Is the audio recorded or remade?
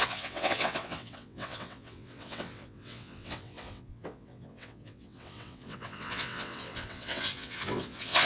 remade